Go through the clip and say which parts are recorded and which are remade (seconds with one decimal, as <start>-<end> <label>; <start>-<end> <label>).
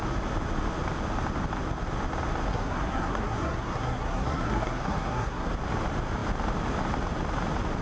0.0-2.5 recorded; 2.5-5.5 remade; 5.5-7.8 recorded